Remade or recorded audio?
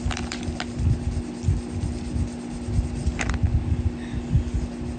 recorded